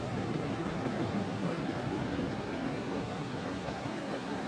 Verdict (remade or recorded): remade